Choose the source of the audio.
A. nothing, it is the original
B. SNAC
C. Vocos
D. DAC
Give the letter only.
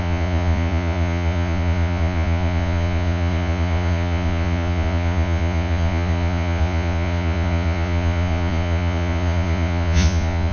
C